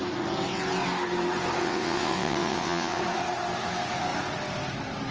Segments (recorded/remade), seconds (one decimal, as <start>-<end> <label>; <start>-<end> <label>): 0.0-1.6 recorded; 1.6-3.0 remade; 3.0-5.1 recorded